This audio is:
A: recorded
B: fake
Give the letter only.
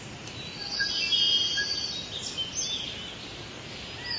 A